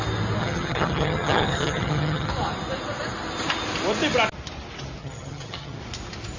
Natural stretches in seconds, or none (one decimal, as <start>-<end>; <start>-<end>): 0.0-0.4; 2.3-5.0; 5.8-6.4